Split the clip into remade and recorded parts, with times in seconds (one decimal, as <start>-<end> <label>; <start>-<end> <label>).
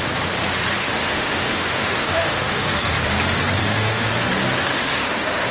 0.0-0.8 recorded; 0.8-2.8 remade; 2.8-3.6 recorded; 3.6-4.1 remade; 4.1-4.7 recorded; 4.7-5.5 remade